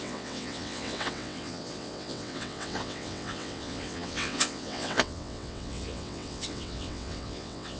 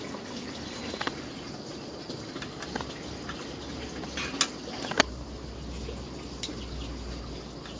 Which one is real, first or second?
second